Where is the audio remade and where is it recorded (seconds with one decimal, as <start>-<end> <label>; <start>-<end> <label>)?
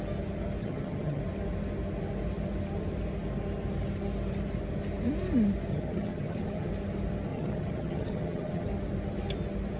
0.0-0.6 recorded; 0.6-1.2 remade; 1.2-5.7 recorded; 5.7-6.7 remade; 6.7-7.3 recorded; 7.3-8.7 remade; 8.7-9.8 recorded